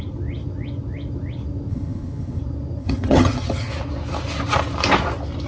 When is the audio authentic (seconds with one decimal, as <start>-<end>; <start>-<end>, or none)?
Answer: 0.0-1.7; 2.4-2.8; 3.7-5.5